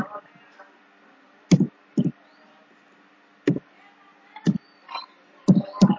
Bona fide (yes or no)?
yes